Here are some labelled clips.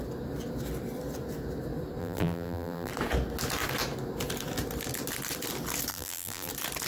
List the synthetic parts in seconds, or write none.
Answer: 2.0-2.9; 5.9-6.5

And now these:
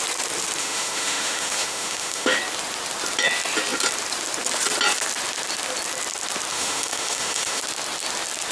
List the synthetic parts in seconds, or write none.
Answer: 0.6-2.4; 6.5-7.6

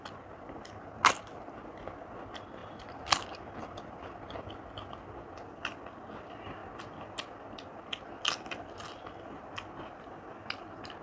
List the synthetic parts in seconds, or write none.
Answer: none

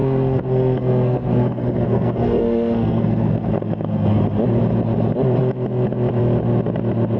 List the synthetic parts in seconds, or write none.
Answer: 0.0-4.2

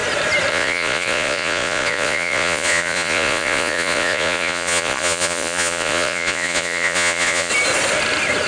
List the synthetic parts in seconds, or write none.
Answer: 0.5-7.5